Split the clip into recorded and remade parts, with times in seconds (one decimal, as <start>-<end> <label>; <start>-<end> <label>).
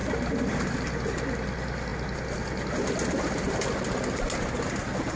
0.0-5.2 recorded